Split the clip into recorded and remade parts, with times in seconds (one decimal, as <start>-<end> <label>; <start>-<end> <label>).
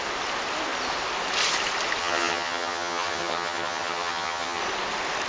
0.0-2.0 recorded; 2.0-4.6 remade; 4.6-5.3 recorded